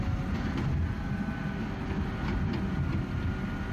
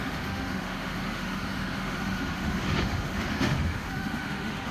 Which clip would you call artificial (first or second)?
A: second